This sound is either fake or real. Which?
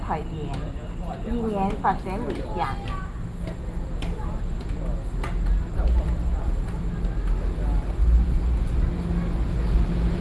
real